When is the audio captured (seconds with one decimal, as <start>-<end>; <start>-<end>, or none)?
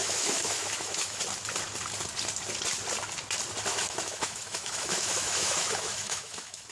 1.2-3.7